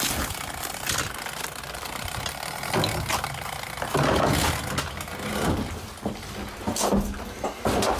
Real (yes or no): yes